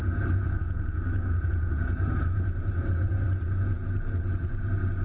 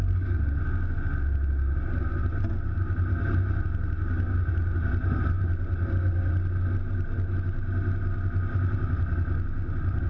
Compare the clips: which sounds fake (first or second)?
first